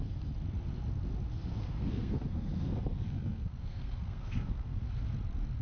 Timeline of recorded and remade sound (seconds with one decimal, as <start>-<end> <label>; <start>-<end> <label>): 0.0-1.5 recorded; 1.5-4.9 remade; 4.9-5.6 recorded